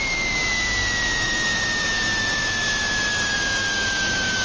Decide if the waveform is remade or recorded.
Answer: remade